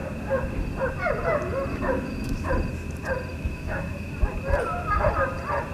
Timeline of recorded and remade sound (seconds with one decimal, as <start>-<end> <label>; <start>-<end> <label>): 0.0-1.7 recorded; 1.7-2.5 remade; 2.5-3.3 recorded; 3.3-4.1 remade; 4.1-5.7 recorded